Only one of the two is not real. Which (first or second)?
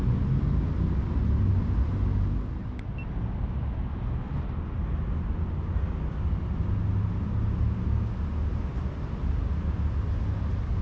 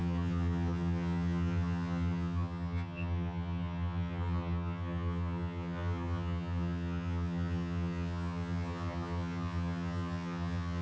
second